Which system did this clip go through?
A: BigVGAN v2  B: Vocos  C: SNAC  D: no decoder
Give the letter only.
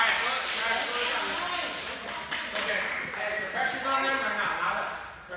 D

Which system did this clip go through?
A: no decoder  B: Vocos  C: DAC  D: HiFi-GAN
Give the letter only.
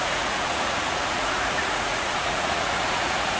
B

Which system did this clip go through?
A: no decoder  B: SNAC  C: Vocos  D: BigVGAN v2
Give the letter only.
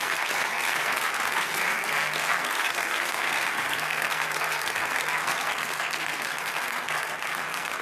B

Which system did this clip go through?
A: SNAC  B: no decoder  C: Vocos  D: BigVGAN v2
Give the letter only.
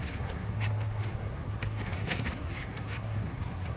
A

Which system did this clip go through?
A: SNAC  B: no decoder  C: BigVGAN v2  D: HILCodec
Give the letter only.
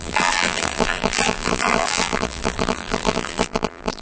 C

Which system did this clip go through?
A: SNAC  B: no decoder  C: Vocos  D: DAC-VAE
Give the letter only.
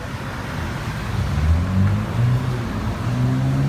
B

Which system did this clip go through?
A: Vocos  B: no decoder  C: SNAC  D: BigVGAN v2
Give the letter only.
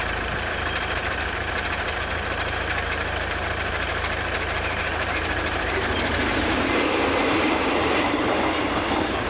D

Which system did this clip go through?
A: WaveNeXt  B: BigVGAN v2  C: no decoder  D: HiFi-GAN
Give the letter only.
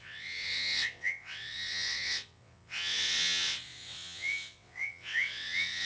A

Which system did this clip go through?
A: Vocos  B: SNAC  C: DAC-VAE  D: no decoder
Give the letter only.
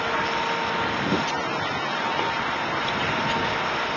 D